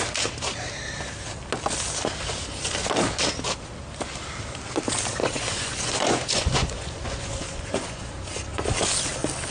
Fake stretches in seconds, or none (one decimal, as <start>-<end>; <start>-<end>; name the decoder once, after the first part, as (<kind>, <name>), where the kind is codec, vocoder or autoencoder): 5.2-8.0 (vocoder, Vocos)